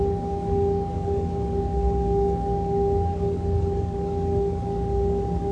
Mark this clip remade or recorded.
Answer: remade